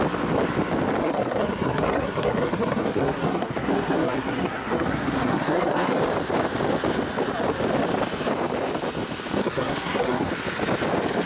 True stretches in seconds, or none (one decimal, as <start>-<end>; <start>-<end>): 0.0-1.0; 6.0-9.4; 10.3-11.3